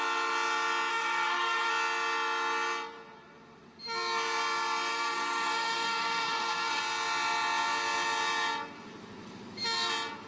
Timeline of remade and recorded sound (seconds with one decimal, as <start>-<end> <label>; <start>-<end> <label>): 0.0-0.9 recorded; 0.9-1.7 remade; 1.7-4.9 recorded; 4.9-6.8 remade; 6.8-10.3 recorded